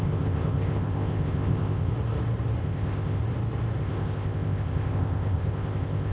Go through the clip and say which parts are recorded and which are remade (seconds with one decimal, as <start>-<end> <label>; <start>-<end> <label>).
0.0-1.9 remade; 1.9-2.6 recorded; 2.6-3.2 remade; 3.2-3.8 recorded; 3.8-6.1 remade